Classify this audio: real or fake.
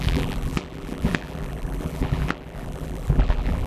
fake